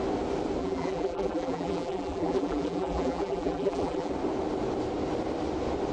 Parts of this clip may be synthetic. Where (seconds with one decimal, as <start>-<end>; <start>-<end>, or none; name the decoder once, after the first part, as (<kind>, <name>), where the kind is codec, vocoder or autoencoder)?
0.6-4.1 (vocoder, BigVGAN v2)